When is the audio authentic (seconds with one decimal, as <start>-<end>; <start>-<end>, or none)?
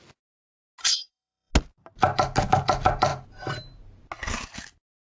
0.0-0.8; 1.5-5.1